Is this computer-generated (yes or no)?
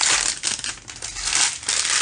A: no